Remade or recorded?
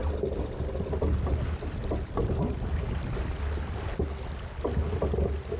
recorded